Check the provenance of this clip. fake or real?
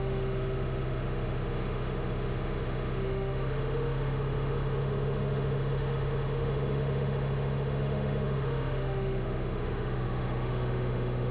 fake